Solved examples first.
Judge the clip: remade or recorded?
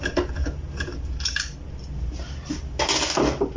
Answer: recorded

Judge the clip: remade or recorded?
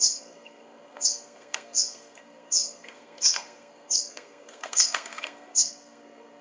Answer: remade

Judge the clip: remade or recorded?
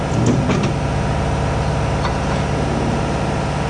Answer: recorded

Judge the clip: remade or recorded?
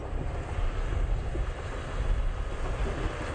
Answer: recorded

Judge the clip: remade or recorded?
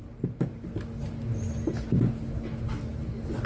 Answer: recorded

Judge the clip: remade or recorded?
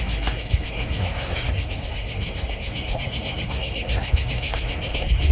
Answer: remade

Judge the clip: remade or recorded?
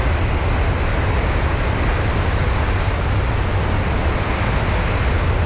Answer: recorded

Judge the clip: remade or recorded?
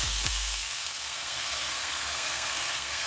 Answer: remade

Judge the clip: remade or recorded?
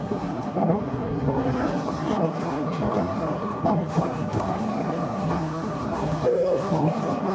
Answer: remade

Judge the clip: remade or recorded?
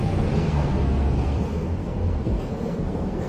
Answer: remade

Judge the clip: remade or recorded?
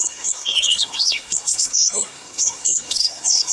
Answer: remade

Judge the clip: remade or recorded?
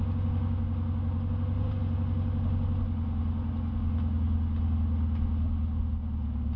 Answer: recorded